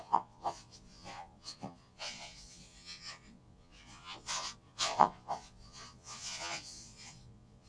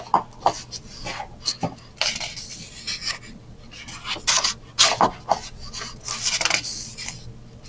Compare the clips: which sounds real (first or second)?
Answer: second